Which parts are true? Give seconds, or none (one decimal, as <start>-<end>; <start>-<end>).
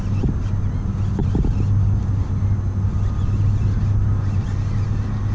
0.0-5.3